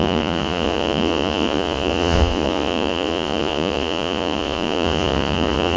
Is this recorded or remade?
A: remade